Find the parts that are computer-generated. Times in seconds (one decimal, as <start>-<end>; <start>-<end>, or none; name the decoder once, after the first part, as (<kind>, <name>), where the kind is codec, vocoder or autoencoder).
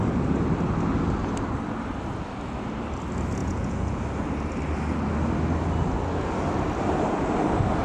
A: 3.4-4.0 (vocoder, Vocos)